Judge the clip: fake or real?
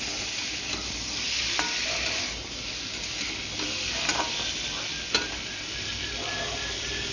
real